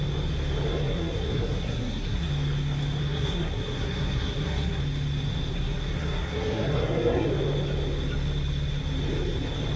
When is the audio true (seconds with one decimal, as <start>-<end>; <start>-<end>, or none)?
0.0-0.7; 2.3-3.0; 4.8-5.5; 7.3-9.8